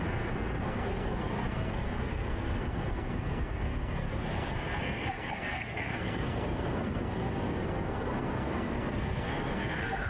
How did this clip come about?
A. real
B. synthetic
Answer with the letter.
B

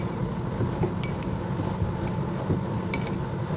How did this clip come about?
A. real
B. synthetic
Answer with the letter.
A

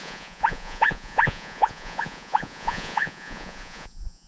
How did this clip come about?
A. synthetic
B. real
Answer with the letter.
A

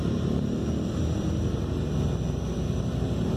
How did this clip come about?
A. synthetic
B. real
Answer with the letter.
A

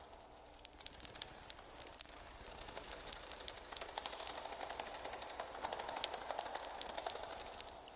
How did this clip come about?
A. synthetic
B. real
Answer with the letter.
B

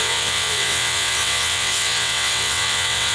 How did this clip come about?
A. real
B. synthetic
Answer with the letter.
B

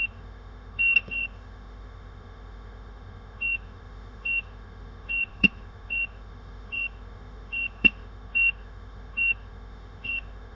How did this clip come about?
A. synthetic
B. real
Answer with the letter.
A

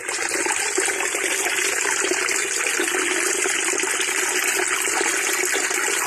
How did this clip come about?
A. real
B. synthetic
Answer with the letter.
A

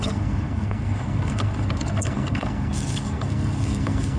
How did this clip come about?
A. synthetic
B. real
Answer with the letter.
A